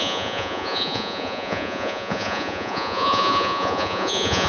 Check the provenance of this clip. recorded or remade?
remade